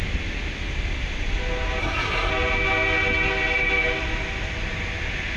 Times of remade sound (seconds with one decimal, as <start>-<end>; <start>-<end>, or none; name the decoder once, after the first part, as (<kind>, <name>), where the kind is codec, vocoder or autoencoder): 1.8-2.3 (codec, SNAC)